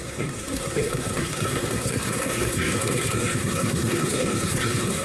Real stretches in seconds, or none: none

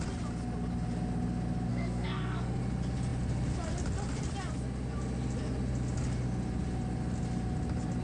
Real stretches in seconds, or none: 0.0-1.7; 2.6-8.0

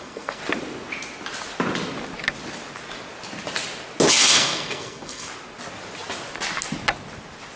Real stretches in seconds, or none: 0.4-4.1; 5.3-7.6

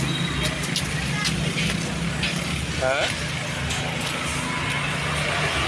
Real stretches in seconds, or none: 0.0-5.7

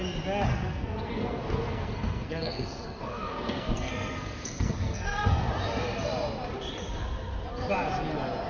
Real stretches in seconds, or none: 0.0-0.5; 5.5-8.5